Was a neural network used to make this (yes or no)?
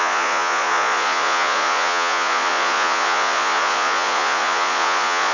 yes